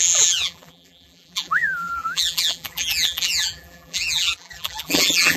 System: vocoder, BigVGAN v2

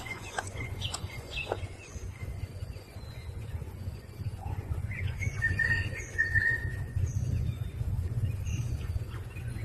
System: vocoder, Vocos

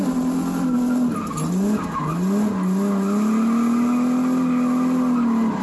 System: none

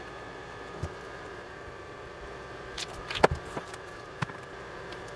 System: vocoder, BigVGAN v2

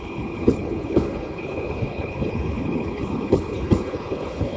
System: codec, HILCodec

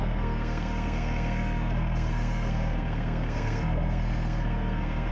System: codec, SNAC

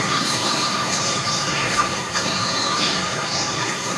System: codec, SNAC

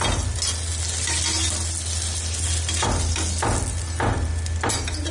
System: none